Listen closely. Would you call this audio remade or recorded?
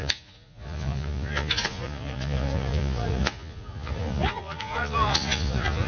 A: remade